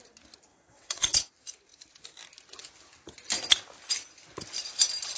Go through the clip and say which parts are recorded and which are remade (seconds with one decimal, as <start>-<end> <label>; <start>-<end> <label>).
0.0-0.5 recorded; 0.5-1.2 remade; 1.2-5.2 recorded